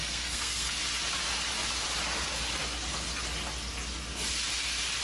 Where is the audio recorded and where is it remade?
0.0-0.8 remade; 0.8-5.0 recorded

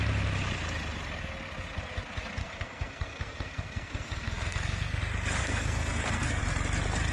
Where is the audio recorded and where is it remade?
0.0-2.4 recorded; 2.4-5.0 remade; 5.0-5.4 recorded; 5.4-6.4 remade; 6.4-7.1 recorded

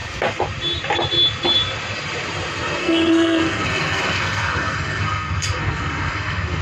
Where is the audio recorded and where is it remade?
0.0-2.8 recorded; 2.8-6.6 remade

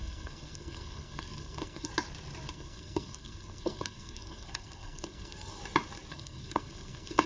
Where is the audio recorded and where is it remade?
0.0-1.9 remade; 1.9-2.5 recorded; 2.5-5.6 remade; 5.6-6.1 recorded; 6.1-7.3 remade

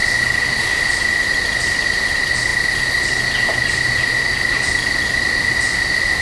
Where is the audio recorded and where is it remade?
0.0-6.2 recorded

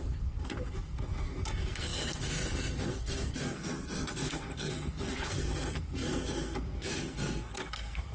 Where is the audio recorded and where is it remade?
0.0-8.1 remade

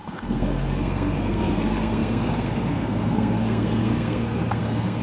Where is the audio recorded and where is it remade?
0.0-5.0 remade

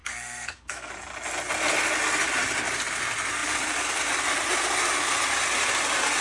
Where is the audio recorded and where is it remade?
0.0-0.9 remade; 0.9-6.2 recorded